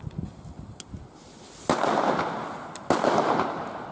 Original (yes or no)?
yes